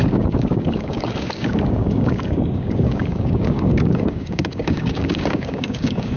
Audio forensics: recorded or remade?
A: remade